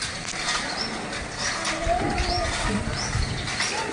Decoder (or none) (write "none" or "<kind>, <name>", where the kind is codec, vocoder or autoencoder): none